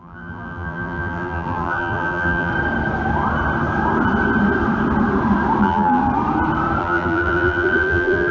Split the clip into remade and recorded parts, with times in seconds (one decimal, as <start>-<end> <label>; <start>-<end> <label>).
0.0-2.5 remade; 2.5-5.6 recorded; 5.6-6.0 remade; 6.0-6.8 recorded; 6.8-8.3 remade